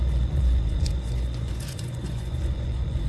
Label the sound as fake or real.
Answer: fake